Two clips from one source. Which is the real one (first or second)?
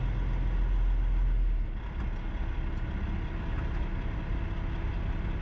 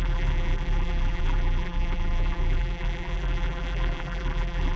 first